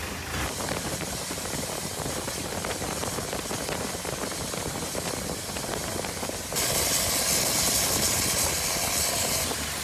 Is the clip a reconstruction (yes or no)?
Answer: no